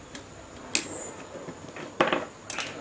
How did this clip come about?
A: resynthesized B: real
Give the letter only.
B